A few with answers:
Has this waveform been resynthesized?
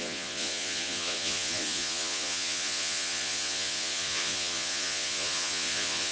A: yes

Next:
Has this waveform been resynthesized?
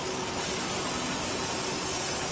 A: no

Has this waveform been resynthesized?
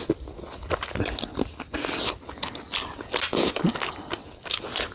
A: no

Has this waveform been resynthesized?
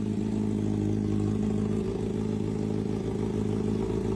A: no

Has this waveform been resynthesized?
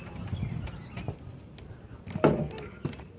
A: no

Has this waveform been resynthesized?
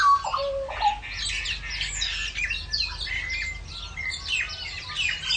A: no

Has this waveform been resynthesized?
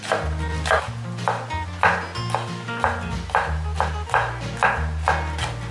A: no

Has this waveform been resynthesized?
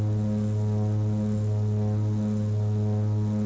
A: no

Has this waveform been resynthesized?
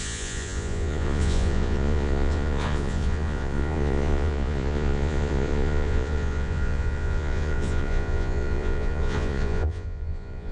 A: yes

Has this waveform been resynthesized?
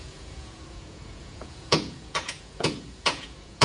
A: yes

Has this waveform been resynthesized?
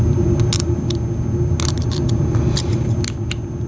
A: no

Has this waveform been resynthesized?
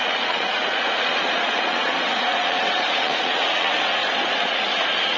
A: yes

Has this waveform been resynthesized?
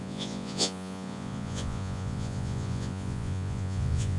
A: yes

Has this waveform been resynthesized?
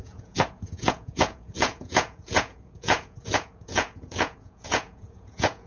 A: yes